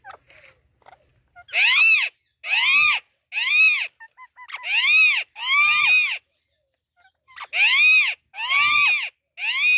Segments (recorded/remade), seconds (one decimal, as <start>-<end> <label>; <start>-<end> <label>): 0.0-9.8 recorded

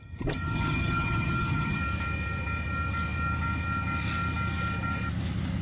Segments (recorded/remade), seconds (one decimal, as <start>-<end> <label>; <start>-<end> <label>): 0.0-1.8 remade; 1.8-5.6 recorded

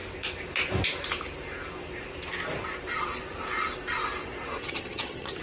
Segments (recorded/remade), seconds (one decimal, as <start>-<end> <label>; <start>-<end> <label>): 0.0-4.6 recorded; 4.6-5.4 remade

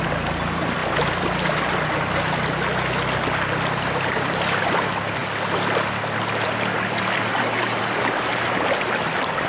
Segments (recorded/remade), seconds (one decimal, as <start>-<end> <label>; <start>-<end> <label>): 0.0-9.5 recorded